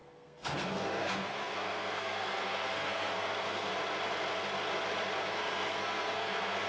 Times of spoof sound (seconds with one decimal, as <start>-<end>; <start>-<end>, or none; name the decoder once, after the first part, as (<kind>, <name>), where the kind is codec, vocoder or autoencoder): 0.0-3.7 (codec, SNAC); 5.3-6.7